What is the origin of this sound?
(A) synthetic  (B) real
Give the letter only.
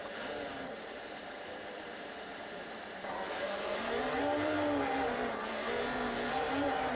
A